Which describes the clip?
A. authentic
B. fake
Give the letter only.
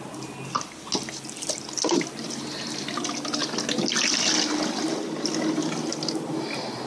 A